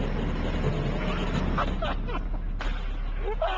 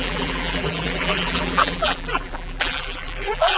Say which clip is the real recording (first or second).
first